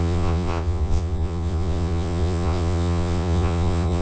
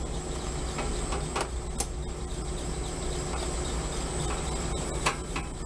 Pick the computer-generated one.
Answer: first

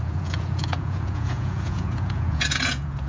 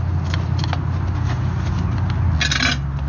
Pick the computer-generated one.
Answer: first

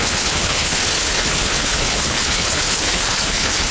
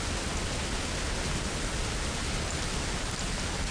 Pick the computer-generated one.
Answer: first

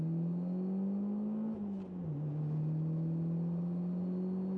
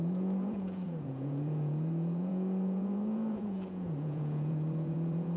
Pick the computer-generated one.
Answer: second